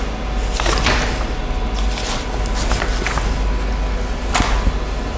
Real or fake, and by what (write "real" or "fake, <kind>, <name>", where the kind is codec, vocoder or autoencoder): real